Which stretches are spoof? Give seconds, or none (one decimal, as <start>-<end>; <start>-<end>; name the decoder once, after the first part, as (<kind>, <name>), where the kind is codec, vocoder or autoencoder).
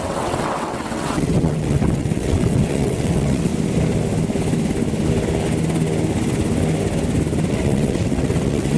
0.0-3.5 (vocoder, WaveNeXt); 7.5-8.8